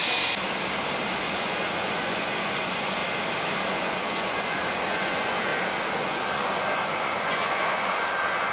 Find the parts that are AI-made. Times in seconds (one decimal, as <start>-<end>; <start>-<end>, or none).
1.2-3.0; 3.7-5.5; 6.0-8.5